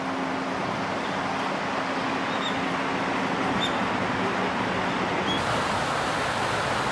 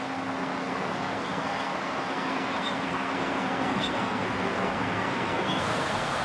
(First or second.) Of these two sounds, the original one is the first